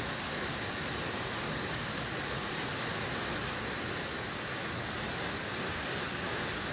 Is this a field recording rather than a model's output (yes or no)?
yes